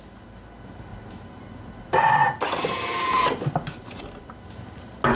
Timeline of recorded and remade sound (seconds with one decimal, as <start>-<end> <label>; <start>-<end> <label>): 0.0-5.2 recorded